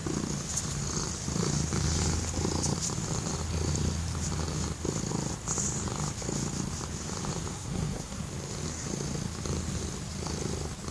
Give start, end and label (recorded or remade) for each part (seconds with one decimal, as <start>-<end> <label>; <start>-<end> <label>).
0.0-7.5 recorded; 7.5-8.2 remade; 8.2-10.9 recorded